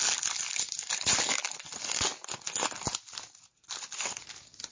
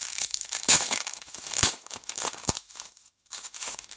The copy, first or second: second